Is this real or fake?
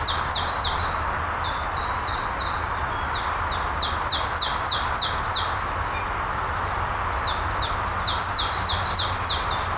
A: real